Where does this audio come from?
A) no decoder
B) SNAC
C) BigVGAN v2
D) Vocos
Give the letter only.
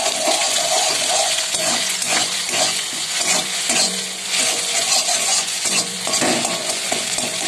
D